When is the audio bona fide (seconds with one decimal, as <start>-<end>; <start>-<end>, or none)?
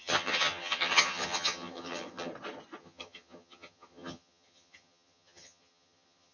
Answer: 2.3-2.8